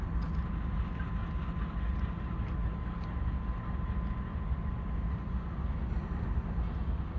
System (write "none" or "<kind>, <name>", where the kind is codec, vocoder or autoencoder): none